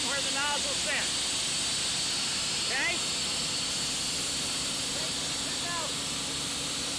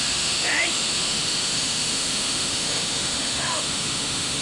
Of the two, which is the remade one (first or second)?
second